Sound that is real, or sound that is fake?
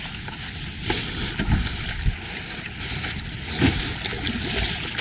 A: real